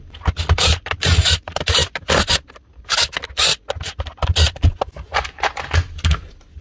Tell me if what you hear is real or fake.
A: real